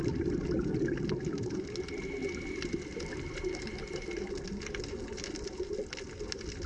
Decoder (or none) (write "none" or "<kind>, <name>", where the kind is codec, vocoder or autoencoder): none